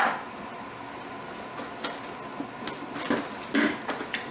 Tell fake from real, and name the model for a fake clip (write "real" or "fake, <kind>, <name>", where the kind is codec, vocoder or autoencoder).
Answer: real